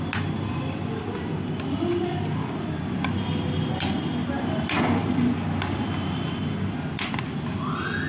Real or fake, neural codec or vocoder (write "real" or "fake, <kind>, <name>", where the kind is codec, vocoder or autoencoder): real